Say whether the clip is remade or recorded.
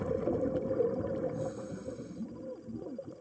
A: recorded